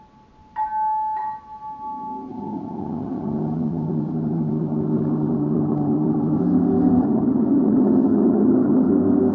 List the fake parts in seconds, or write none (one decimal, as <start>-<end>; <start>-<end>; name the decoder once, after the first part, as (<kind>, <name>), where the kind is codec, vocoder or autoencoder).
2.3-6.4 (vocoder, HiFi-GAN); 7.0-8.9